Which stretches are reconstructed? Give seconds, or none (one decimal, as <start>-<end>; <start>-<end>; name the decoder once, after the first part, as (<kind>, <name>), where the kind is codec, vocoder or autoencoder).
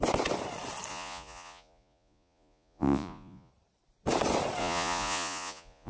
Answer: 0.9-3.5 (vocoder, Vocos); 4.6-5.9